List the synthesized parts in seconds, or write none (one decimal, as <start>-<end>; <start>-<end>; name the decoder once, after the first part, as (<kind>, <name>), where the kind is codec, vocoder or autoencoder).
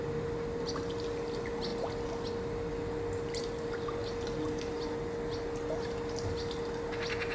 none